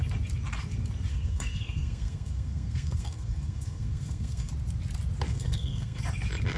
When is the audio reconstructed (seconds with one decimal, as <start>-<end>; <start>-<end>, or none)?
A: 1.1-4.5; 5.3-6.0